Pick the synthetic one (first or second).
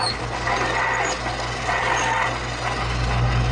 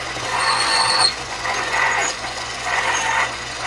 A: second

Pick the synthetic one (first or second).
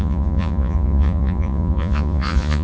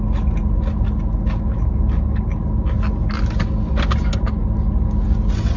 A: first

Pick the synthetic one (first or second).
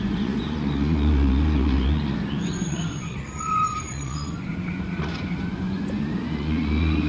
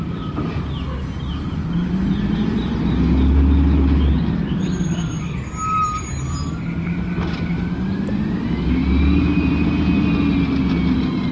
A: first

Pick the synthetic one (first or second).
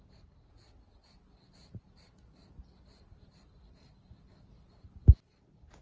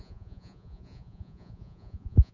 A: second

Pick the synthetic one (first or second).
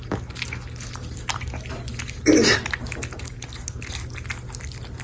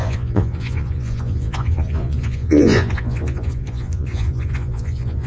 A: second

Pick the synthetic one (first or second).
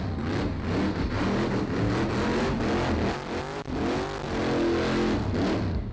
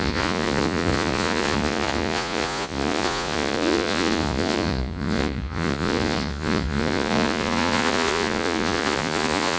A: second